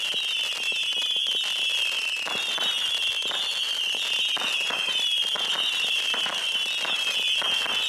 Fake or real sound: real